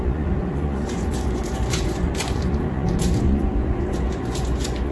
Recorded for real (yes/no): no